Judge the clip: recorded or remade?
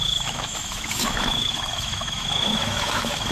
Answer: remade